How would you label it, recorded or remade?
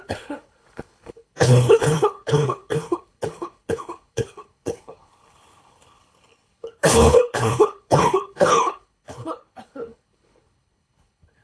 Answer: remade